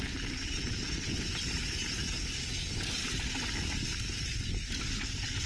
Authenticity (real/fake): real